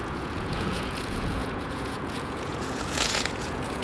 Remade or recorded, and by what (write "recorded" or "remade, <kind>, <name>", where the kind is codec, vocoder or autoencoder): remade, vocoder, Vocos